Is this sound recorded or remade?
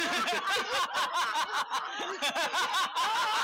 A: recorded